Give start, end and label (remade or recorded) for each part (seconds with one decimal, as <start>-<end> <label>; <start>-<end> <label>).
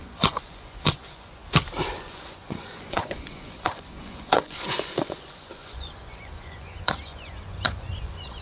0.0-1.4 remade; 1.4-2.0 recorded; 2.0-8.4 remade